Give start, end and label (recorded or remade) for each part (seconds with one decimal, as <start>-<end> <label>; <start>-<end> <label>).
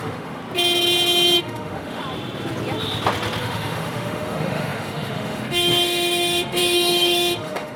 0.0-0.4 remade; 0.4-1.4 recorded; 1.4-2.0 remade; 2.0-3.4 recorded; 3.4-7.8 remade